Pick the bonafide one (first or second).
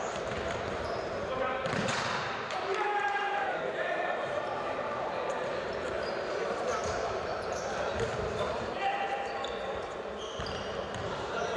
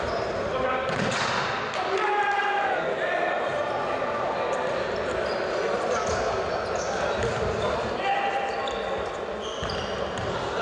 second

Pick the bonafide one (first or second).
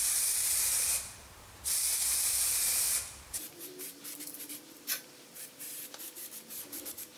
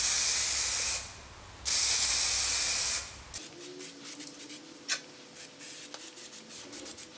second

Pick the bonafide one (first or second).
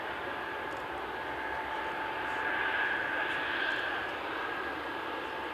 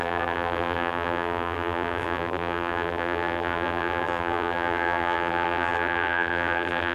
first